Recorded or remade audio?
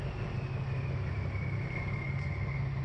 recorded